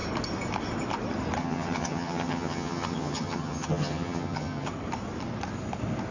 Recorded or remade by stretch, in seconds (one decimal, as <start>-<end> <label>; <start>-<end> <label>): 0.0-1.4 recorded; 1.4-4.7 remade; 4.7-6.1 recorded